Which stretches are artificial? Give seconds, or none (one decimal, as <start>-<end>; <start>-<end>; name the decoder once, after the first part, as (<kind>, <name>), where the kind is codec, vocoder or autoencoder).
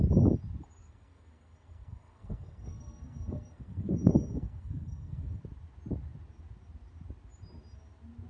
0.8-5.4 (codec, SNAC)